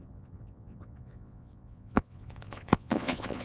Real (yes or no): no